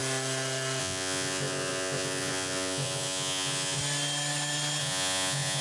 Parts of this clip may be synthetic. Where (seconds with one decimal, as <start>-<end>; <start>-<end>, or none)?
0.8-3.8; 4.8-5.6